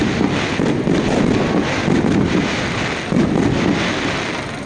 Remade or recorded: recorded